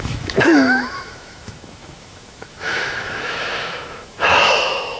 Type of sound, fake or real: fake